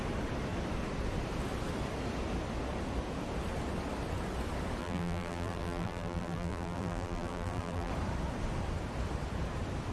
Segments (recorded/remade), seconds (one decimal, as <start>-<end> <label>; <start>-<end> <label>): 0.0-4.8 recorded; 4.8-7.9 remade; 7.9-9.9 recorded